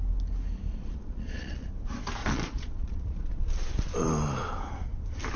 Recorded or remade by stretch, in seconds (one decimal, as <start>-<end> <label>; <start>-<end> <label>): 0.0-0.7 recorded; 0.7-1.7 remade; 1.7-2.2 recorded; 2.2-3.4 remade; 3.4-5.4 recorded